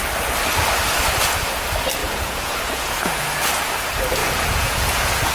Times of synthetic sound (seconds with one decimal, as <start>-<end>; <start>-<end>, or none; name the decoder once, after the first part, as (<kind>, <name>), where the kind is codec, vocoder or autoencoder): 2.0-3.7 (vocoder, Vocos); 4.2-5.3